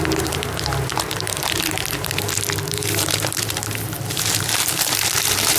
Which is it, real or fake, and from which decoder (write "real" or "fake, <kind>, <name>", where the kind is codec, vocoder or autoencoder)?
fake, vocoder, BigVGAN v2